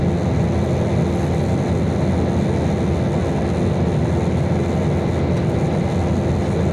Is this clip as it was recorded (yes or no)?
yes